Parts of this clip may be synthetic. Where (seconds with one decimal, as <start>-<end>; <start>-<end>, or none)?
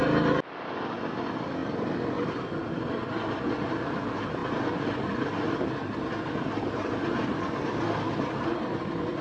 none